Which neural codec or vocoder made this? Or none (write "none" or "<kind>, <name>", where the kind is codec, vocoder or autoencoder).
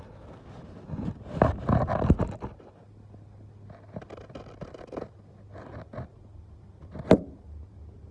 none